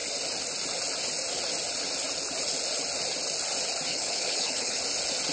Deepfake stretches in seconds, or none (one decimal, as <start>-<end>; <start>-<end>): 3.9-4.8